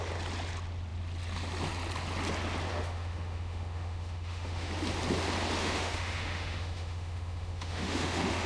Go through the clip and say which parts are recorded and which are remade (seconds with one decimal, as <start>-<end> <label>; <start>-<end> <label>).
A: 0.0-2.7 recorded; 2.7-4.7 remade; 4.7-5.6 recorded; 5.6-8.5 remade